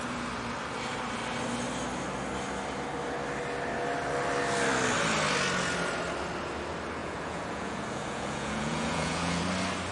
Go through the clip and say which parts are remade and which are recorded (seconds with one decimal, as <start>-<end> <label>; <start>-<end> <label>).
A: 0.0-7.0 recorded; 7.0-9.4 remade; 9.4-9.9 recorded